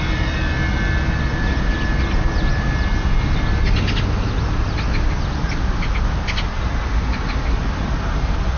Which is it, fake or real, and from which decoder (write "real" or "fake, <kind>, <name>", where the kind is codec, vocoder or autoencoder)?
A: real